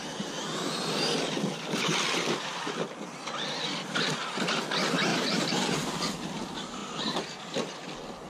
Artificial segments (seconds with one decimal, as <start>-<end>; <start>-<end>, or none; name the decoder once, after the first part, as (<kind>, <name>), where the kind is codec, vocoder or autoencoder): 5.1-5.7 (vocoder, BigVGAN v2)